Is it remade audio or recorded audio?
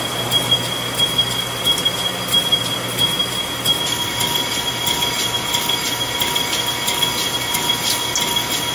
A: recorded